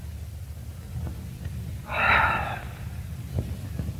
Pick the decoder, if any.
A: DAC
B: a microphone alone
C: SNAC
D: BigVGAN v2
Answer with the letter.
D